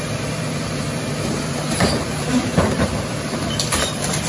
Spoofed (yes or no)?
yes